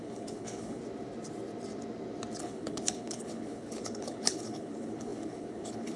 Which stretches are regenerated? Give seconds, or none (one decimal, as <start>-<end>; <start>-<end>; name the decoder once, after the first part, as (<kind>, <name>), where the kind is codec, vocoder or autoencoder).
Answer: 0.0-0.8 (codec, HILCodec); 2.4-6.0